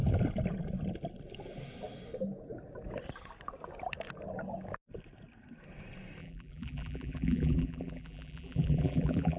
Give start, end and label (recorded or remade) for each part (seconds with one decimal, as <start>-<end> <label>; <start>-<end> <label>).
0.0-6.2 recorded; 6.2-9.4 remade

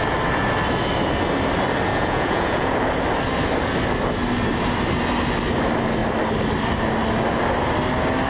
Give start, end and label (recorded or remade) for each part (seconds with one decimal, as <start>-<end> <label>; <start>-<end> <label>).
0.0-1.9 recorded; 1.9-2.7 remade; 2.7-8.3 recorded

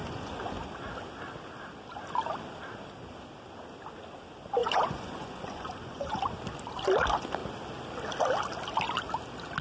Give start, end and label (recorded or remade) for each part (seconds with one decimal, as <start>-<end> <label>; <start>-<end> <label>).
0.0-0.6 remade; 0.6-4.6 recorded; 4.6-6.2 remade; 6.2-9.6 recorded

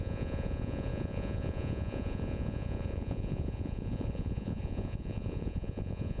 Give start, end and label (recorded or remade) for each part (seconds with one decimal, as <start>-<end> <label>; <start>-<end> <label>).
0.0-6.2 remade

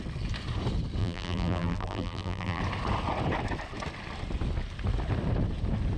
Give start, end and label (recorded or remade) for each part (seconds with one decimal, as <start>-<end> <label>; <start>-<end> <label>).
0.0-1.0 recorded; 1.0-2.6 remade; 2.6-6.0 recorded

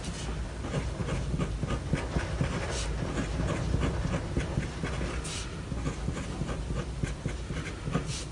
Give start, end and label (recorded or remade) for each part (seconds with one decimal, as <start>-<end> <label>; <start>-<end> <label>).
0.0-8.3 recorded

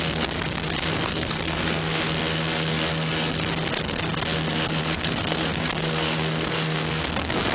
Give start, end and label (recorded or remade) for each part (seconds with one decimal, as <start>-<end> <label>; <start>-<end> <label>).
0.0-1.1 recorded; 1.1-2.0 remade; 2.0-4.8 recorded; 4.8-7.1 remade; 7.1-7.5 recorded